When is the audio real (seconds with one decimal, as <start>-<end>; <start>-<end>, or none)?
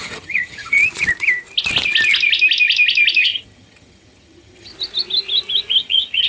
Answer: 0.8-3.2; 4.7-5.8